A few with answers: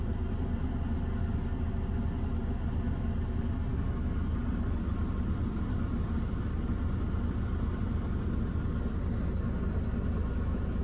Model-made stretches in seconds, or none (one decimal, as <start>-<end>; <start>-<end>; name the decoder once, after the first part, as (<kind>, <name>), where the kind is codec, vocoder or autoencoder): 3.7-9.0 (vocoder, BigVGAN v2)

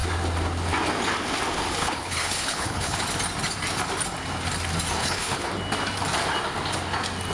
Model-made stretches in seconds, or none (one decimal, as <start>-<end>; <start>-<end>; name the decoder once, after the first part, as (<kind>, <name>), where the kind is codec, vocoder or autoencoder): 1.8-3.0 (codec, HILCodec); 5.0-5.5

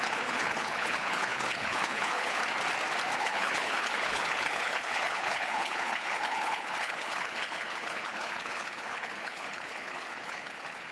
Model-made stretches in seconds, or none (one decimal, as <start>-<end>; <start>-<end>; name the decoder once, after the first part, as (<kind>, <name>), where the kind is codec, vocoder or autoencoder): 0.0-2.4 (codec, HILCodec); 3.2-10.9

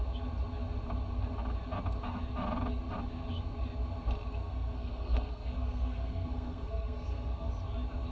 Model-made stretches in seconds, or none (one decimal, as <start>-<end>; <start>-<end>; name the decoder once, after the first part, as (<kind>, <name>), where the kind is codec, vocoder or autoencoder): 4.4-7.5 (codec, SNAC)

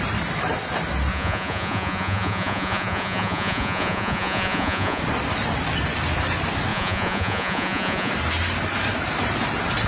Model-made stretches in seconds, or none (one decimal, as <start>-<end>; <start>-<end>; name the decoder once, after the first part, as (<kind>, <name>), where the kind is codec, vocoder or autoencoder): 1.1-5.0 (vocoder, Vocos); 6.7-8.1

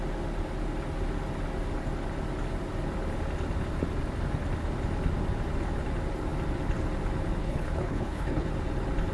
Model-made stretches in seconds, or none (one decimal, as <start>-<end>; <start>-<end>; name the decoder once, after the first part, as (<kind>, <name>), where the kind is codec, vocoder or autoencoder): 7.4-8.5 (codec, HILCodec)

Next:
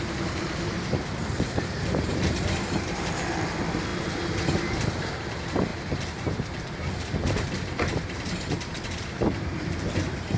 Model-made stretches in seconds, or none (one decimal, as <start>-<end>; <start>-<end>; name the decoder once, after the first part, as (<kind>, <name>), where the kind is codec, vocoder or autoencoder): 0.0-10.4 (vocoder, BigVGAN v2)

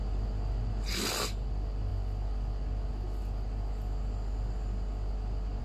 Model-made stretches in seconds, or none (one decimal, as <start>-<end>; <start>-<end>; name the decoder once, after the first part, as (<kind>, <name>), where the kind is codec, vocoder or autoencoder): none